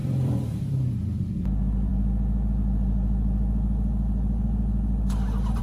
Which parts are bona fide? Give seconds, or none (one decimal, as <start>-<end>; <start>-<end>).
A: 1.3-5.6